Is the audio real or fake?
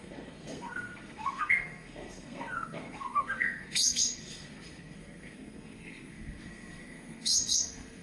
fake